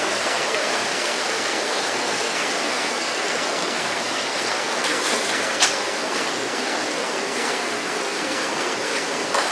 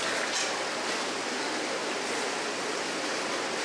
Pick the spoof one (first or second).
first